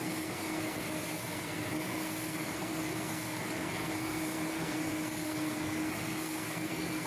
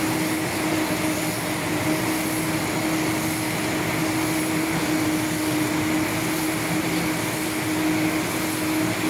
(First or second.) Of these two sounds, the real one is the second